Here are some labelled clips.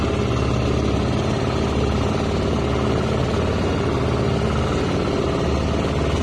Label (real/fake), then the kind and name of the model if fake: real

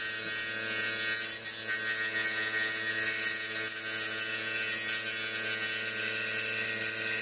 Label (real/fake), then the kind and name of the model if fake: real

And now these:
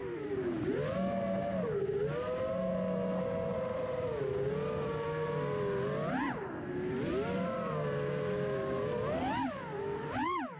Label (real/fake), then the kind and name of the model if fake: real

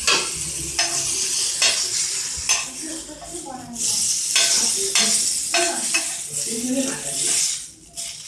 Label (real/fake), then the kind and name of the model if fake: real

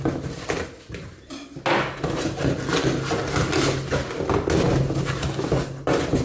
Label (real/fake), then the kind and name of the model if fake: real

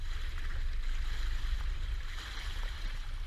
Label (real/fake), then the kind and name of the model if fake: fake, vocoder, BigVGAN v2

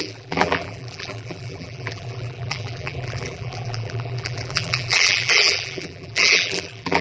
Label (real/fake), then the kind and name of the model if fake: fake, vocoder, BigVGAN v2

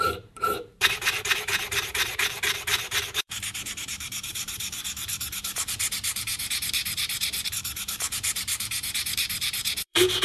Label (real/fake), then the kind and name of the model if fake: fake, vocoder, BigVGAN v2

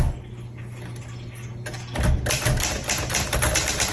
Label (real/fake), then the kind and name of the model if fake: real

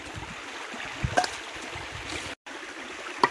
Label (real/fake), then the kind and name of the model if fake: real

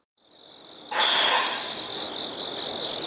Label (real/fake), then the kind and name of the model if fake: real